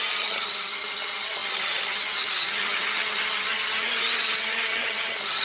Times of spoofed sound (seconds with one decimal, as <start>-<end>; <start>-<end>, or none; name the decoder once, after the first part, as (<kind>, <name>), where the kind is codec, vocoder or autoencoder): 0.0-5.4 (vocoder, HiFi-GAN)